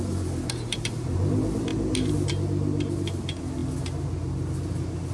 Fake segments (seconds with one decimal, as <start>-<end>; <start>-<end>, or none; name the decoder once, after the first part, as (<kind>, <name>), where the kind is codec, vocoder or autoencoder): none